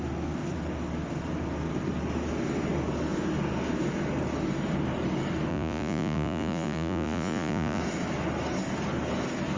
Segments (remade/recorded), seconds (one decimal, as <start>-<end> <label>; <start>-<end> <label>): 0.0-5.5 recorded; 5.5-7.8 remade; 7.8-9.6 recorded